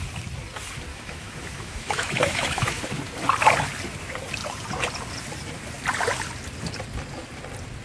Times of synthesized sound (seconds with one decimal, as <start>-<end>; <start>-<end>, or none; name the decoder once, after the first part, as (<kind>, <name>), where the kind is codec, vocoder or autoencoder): 0.9-2.8 (autoencoder, DAC-VAE)